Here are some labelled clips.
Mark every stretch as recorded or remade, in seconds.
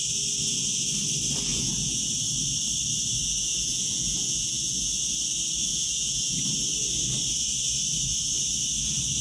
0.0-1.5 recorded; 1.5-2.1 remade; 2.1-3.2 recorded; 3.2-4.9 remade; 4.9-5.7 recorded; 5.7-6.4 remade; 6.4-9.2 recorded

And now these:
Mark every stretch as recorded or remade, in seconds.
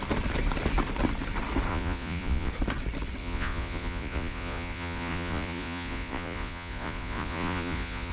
0.0-1.7 recorded; 1.7-2.5 remade; 2.5-3.2 recorded; 3.2-8.1 remade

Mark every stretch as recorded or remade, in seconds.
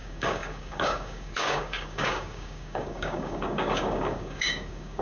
0.0-5.0 remade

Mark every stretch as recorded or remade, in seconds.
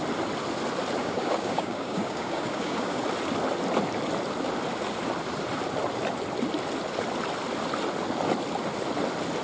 0.0-1.0 recorded; 1.0-3.0 remade; 3.0-9.4 recorded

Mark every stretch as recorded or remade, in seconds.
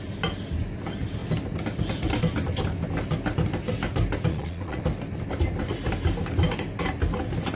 0.0-4.3 recorded; 4.3-4.8 remade; 4.8-7.5 recorded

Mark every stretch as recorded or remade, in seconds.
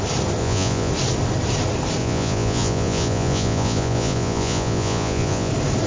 0.0-0.4 recorded; 0.4-0.9 remade; 0.9-2.0 recorded; 2.0-5.5 remade; 5.5-5.9 recorded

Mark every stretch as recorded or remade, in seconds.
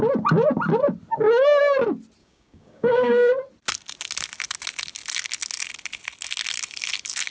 0.0-2.2 recorded; 2.2-3.3 remade; 3.3-7.3 recorded